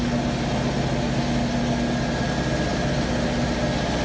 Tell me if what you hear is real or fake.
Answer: real